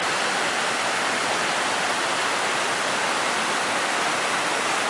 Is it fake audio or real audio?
real